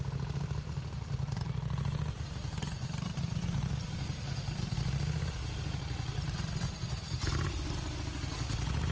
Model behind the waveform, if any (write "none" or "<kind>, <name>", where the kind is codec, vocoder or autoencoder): none